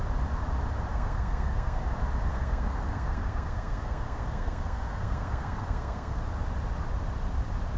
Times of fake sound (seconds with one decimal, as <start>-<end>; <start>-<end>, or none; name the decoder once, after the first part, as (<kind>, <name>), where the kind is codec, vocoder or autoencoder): 0.9-1.8 (codec, SNAC); 2.3-6.2